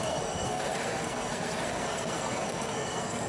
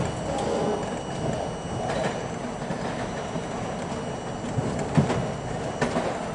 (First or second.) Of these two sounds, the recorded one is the second